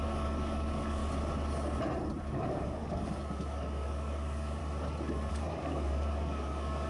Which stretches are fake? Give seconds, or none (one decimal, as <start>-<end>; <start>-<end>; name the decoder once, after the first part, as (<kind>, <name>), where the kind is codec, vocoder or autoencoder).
0.0-1.0 (codec, DAC); 2.2-4.6; 5.3-6.9